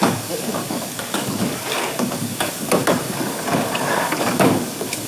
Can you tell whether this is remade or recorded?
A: remade